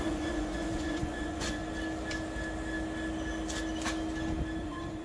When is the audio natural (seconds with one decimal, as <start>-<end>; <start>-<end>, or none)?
1.6-4.6